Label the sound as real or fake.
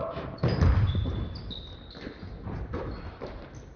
real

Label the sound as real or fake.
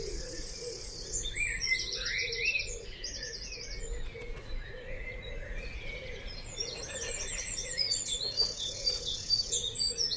fake